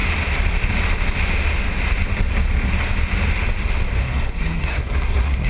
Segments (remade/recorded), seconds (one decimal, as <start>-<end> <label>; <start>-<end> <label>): 0.0-4.0 recorded; 4.0-5.5 remade

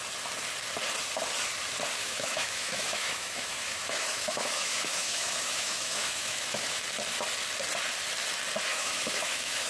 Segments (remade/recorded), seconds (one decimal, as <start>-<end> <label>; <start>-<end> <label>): 0.0-2.0 recorded; 2.0-6.8 remade; 6.8-8.7 recorded; 8.7-9.7 remade

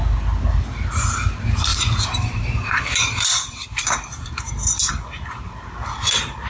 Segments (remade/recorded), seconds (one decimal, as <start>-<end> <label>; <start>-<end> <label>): 0.0-1.7 recorded; 1.7-4.9 remade; 4.9-6.5 recorded

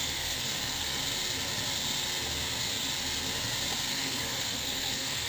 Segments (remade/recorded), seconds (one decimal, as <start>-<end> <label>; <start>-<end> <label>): 0.0-1.0 remade; 1.0-3.9 recorded; 3.9-5.3 remade

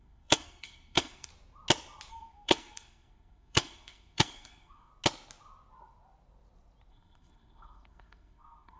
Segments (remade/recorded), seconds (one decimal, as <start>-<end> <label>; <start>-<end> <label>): 0.0-1.3 remade; 1.3-2.1 recorded; 2.1-4.9 remade; 4.9-6.9 recorded; 6.9-8.8 remade

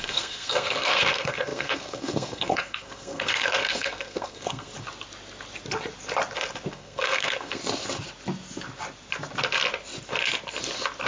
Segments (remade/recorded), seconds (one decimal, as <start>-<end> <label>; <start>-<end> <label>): 0.0-4.7 remade; 4.7-6.7 recorded; 6.7-7.6 remade; 7.6-11.1 recorded